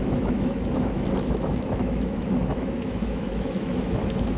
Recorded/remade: remade